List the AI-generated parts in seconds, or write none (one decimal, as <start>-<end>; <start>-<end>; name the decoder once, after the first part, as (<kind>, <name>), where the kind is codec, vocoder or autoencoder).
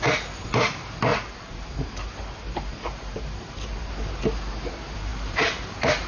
1.1-3.9 (vocoder, BigVGAN v2)